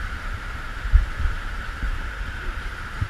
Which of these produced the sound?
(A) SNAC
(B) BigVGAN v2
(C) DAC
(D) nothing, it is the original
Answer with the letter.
B